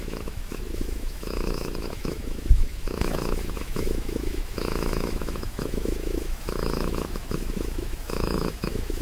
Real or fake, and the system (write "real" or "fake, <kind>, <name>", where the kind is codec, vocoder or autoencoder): fake, autoencoder, DAC-VAE